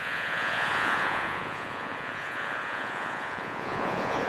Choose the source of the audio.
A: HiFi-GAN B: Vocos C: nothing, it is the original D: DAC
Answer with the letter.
B